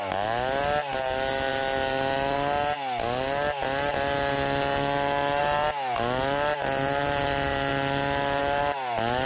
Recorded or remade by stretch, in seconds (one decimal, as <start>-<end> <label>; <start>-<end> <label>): 0.0-9.3 recorded